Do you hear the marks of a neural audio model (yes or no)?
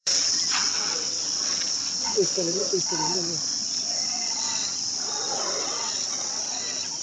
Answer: yes